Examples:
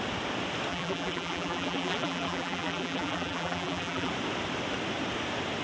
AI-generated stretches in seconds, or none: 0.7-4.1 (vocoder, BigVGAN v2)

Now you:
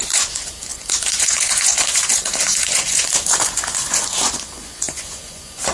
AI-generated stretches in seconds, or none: 0.0-5.7 (vocoder, Vocos)

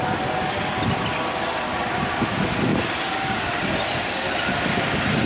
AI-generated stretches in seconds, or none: none

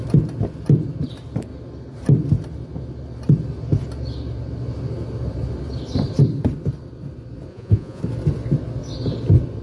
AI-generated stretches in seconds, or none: 7.5-8.0 (vocoder, Vocos)

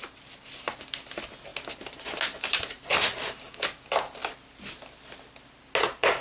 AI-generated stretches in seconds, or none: none

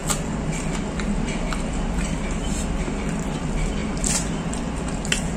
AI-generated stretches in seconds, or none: 3.8-4.5 (vocoder, BigVGAN v2)

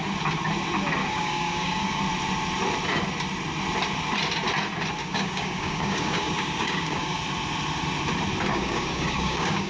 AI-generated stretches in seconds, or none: 1.0-2.0 (codec, DAC); 5.0-7.2; 8.5-9.7

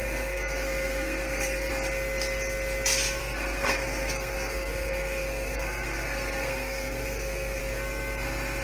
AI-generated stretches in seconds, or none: 0.0-1.7 (codec, SNAC); 3.2-7.6